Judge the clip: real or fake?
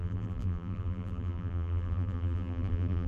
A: fake